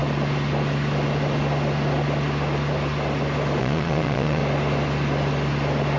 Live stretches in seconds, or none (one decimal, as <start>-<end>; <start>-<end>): 0.0-3.6; 4.4-6.0